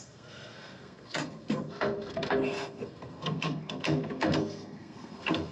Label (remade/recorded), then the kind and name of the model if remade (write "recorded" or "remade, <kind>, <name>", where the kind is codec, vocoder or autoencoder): remade, codec, SNAC